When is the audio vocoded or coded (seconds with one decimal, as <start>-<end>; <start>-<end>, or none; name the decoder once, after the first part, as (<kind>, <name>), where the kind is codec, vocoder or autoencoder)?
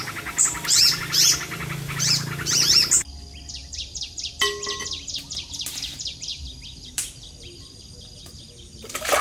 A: 3.6-4.3 (vocoder, BigVGAN v2); 6.3-8.2